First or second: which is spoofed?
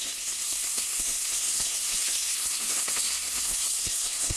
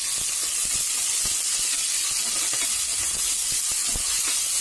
first